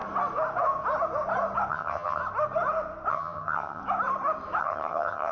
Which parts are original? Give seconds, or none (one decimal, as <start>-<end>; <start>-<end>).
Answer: 0.0-1.7; 2.2-3.1; 3.8-4.6